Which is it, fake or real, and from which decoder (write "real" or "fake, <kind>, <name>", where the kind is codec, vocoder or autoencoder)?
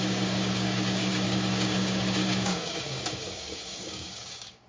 fake, codec, DAC